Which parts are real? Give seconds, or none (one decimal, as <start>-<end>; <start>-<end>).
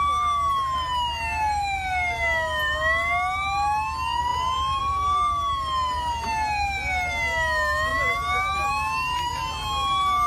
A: 0.0-10.3